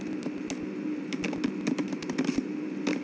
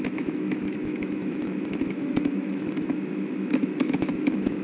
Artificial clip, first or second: second